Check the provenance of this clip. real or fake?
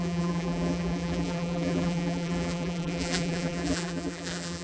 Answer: fake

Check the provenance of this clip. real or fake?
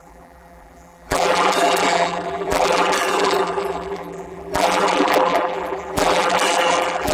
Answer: fake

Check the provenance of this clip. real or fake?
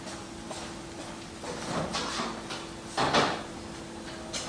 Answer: real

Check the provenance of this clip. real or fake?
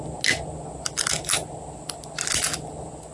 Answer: real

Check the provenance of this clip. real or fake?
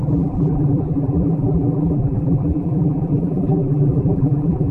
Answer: fake